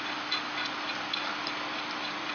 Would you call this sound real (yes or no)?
yes